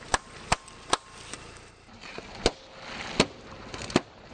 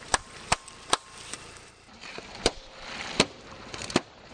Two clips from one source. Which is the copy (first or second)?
second